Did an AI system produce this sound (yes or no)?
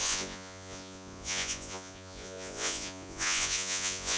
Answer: yes